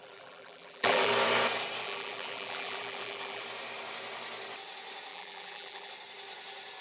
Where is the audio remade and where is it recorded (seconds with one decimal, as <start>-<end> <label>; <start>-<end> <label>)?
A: 0.0-1.1 remade; 1.1-1.8 recorded; 1.8-3.4 remade; 3.4-5.1 recorded; 5.1-5.9 remade; 5.9-6.8 recorded